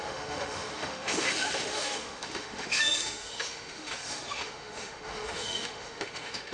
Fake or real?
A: fake